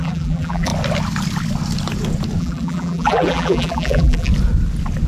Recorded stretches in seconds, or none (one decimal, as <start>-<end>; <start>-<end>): 0.7-2.4; 4.3-5.1